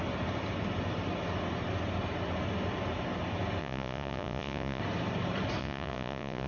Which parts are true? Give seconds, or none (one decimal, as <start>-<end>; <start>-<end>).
0.0-3.6; 4.8-5.6